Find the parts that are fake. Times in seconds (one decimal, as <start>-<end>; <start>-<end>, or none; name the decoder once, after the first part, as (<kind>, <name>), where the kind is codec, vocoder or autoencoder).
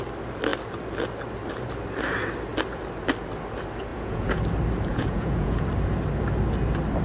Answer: 3.9-4.4 (vocoder, Vocos); 4.9-5.7